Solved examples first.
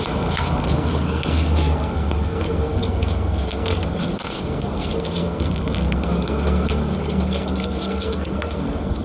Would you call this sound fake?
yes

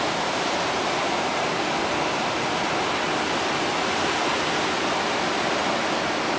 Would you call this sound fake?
no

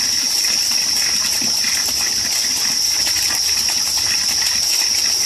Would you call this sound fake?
no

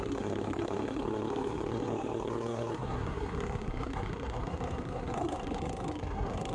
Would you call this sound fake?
yes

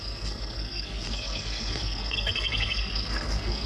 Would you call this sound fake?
yes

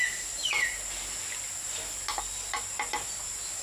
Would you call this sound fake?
no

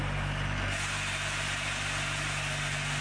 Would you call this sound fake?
no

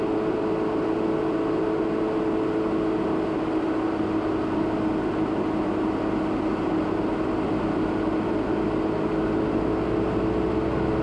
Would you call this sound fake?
no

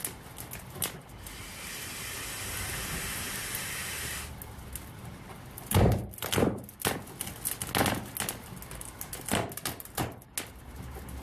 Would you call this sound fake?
no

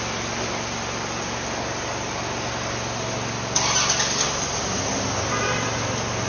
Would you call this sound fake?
no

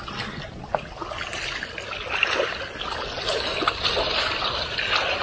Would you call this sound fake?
no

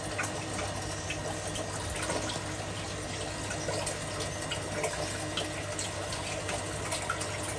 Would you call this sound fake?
no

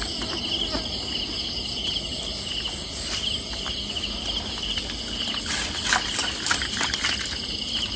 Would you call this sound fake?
no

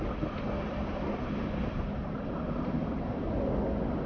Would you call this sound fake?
no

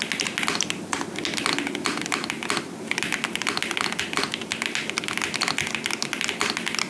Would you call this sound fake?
no